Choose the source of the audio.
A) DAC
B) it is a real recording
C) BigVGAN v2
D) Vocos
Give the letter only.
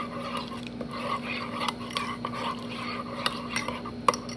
B